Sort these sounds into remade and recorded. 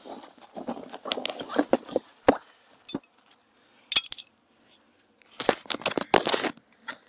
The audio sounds recorded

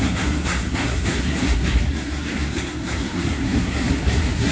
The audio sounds remade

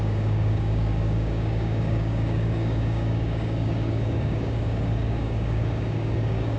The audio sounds remade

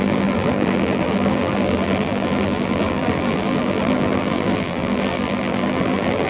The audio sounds remade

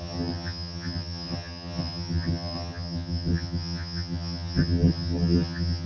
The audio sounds remade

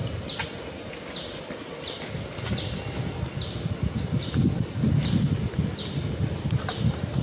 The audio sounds recorded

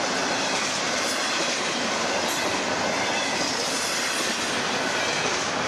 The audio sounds recorded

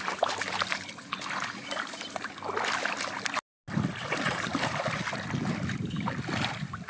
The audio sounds recorded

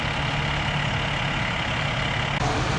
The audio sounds recorded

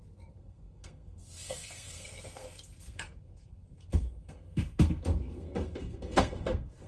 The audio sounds remade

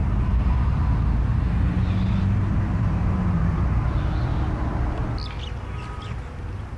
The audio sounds recorded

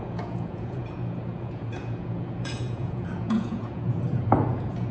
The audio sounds remade